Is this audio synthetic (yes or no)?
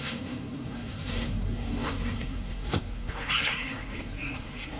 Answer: yes